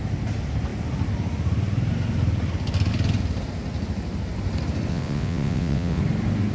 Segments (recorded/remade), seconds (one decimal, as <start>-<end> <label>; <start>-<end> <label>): 0.0-4.9 recorded; 4.9-6.0 remade; 6.0-6.5 recorded